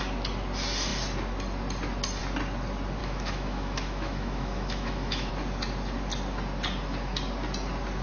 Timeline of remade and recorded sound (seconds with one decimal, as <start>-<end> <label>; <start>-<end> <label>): 0.0-3.0 recorded; 3.0-5.3 remade; 5.3-8.0 recorded